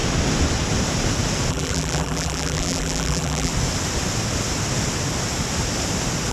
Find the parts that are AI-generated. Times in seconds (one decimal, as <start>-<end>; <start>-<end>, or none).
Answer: 1.5-3.5